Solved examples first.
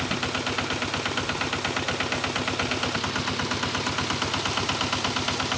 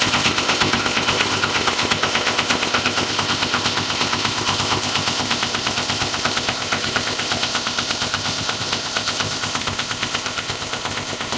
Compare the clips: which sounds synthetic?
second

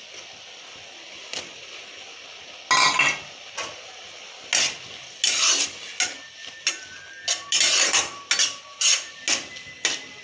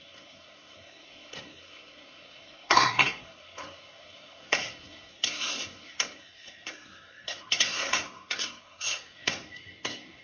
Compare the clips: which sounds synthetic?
second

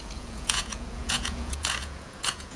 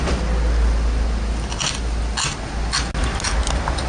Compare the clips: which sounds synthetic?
first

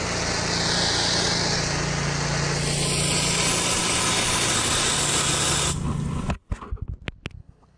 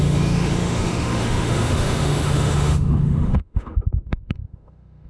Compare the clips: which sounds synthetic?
second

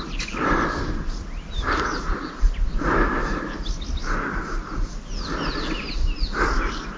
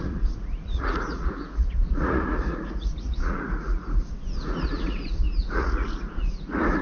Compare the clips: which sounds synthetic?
second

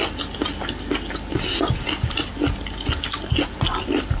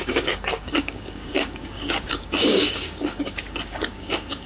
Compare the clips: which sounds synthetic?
second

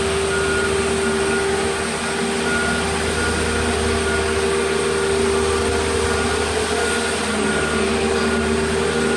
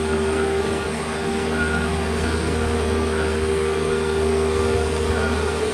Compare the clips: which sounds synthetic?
second